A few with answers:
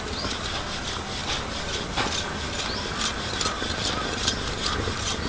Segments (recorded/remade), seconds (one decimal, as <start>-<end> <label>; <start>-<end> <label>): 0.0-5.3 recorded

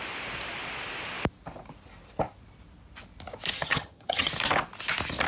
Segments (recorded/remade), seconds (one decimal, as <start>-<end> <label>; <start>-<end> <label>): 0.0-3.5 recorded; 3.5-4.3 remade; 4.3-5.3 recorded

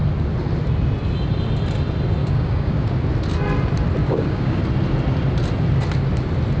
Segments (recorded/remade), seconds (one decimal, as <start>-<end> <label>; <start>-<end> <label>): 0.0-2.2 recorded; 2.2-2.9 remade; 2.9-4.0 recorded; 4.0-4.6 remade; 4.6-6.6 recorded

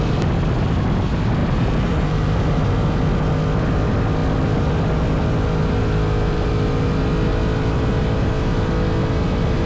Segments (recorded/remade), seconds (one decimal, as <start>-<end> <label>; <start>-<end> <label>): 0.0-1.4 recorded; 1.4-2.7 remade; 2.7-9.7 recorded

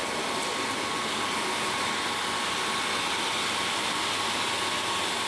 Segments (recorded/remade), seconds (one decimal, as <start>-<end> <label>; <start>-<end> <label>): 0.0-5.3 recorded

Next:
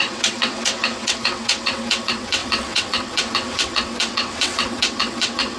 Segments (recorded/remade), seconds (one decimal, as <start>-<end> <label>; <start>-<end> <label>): 0.0-5.6 remade

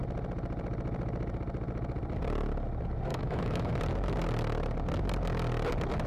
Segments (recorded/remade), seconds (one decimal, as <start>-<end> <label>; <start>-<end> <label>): 0.0-3.1 recorded; 3.1-3.7 remade; 3.7-6.1 recorded

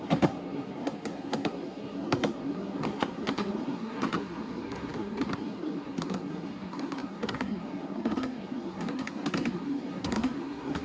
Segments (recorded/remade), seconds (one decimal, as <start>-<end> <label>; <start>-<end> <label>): 0.0-10.8 remade